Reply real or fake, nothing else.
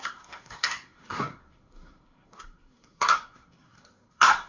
fake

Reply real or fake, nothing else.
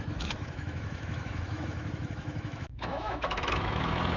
fake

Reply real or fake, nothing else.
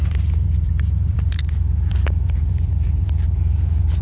fake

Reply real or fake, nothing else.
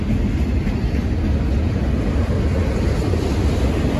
real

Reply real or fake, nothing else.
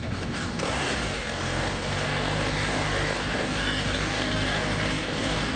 fake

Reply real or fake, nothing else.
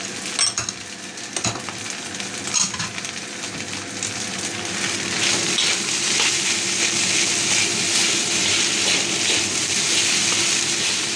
real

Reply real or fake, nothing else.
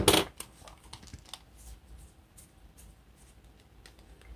real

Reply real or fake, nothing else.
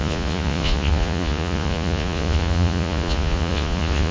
fake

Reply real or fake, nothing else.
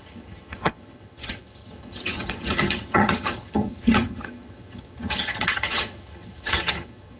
fake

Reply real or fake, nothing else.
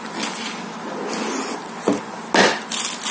real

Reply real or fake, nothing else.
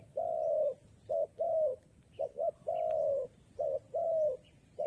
real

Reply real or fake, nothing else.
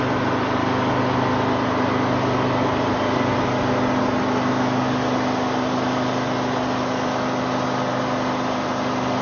real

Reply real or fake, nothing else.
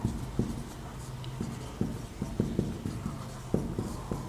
real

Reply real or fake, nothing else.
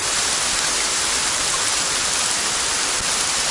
real